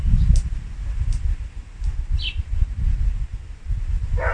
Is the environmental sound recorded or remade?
recorded